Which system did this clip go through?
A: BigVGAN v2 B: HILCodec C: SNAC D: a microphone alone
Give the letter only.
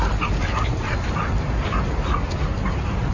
D